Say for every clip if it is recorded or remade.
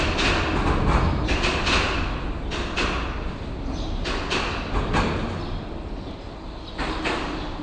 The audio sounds recorded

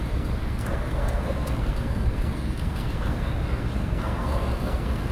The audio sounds remade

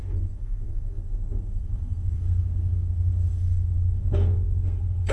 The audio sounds remade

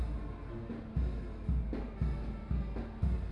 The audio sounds recorded